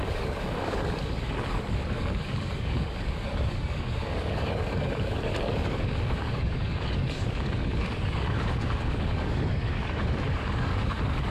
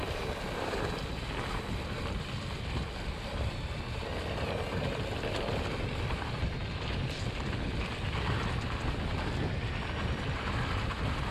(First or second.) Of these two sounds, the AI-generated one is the first